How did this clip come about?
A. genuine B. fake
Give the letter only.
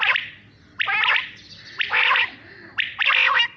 A